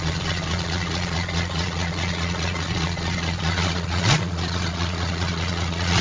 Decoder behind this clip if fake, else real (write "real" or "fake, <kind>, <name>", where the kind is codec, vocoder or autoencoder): fake, vocoder, Vocos